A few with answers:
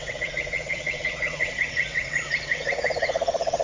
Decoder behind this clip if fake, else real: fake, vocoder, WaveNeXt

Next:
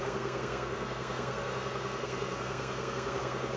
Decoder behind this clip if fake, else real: fake, codec, SNAC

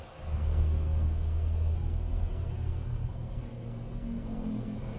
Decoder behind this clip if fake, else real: fake, codec, SNAC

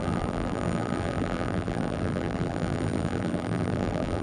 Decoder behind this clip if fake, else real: fake, vocoder, BigVGAN v2